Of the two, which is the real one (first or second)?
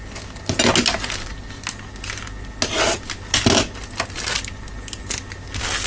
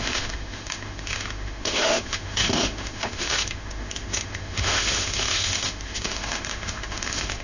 first